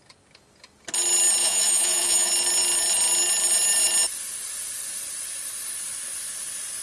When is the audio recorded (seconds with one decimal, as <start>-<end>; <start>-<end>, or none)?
0.0-1.4; 2.3-6.8